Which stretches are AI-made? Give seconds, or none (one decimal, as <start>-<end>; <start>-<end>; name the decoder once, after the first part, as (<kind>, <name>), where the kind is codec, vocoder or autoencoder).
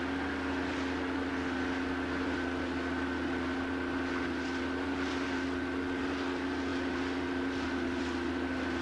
none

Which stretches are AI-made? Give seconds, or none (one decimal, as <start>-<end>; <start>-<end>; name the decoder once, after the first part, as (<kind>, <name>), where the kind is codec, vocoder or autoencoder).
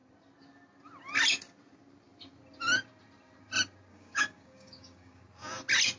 3.9-5.2 (codec, DAC)